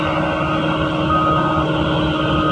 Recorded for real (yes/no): yes